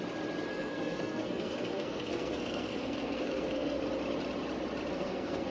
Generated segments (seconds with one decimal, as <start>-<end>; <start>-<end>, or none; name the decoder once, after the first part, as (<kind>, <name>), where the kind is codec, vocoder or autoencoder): 0.5-3.8 (codec, SNAC); 4.9-5.5